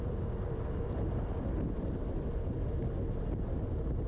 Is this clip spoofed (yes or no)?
no